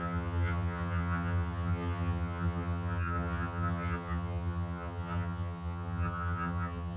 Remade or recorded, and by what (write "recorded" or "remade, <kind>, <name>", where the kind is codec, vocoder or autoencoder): remade, vocoder, HiFi-GAN